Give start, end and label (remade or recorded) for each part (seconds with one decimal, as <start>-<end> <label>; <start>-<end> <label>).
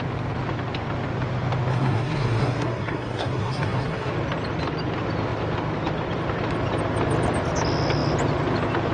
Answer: 0.0-1.7 recorded; 1.7-4.1 remade; 4.1-8.9 recorded